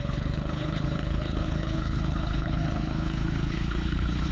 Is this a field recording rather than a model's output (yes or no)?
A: no